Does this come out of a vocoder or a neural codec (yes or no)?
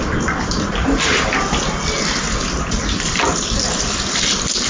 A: no